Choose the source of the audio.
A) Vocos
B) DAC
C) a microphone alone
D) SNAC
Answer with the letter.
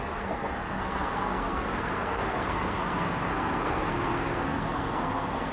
D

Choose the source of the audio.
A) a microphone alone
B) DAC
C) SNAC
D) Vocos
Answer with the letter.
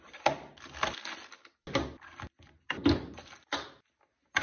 A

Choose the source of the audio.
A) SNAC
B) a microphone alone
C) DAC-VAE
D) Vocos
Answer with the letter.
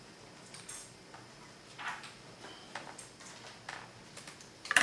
B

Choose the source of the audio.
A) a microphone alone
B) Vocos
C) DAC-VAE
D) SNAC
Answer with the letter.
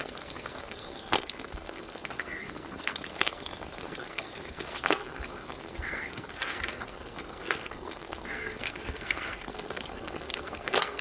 D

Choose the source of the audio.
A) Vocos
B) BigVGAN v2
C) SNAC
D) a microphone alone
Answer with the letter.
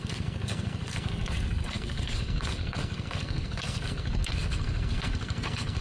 C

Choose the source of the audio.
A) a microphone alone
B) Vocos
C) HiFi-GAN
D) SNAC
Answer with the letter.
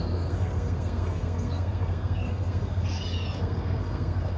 D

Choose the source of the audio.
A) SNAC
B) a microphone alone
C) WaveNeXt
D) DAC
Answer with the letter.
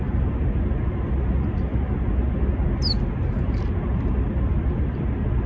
B